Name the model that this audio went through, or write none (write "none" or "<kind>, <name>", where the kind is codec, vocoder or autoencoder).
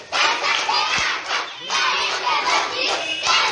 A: none